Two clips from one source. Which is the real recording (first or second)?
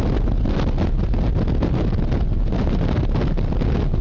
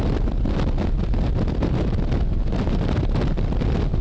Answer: first